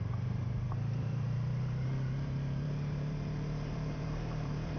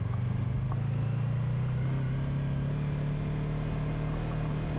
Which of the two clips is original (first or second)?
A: second